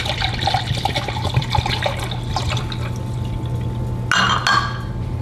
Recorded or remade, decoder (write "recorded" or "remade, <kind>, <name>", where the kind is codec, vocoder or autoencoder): recorded